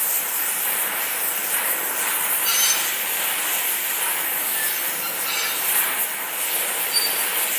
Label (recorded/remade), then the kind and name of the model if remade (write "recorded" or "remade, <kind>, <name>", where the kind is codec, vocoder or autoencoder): remade, vocoder, BigVGAN v2